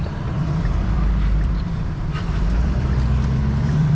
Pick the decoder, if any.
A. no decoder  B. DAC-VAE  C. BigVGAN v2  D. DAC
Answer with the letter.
C